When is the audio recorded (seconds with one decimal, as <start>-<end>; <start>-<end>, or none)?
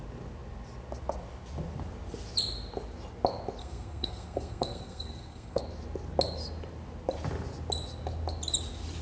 0.0-3.6; 5.6-9.0